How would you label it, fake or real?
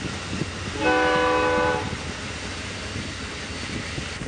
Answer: real